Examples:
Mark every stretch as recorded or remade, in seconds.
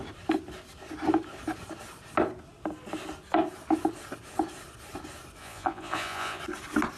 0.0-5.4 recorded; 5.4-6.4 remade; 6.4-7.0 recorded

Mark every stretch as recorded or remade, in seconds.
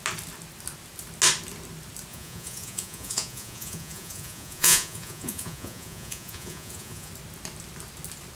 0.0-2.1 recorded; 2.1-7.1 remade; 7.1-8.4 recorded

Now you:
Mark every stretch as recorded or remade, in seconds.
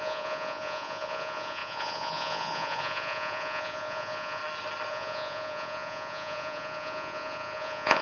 0.0-4.4 remade; 4.4-4.9 recorded; 4.9-8.0 remade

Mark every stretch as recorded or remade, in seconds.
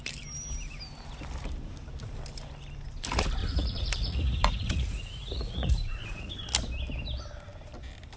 0.0-3.4 recorded; 3.4-6.3 remade; 6.3-8.2 recorded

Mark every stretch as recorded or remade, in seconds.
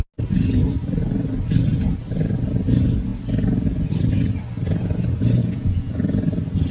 0.0-5.4 recorded; 5.4-5.9 remade; 5.9-6.7 recorded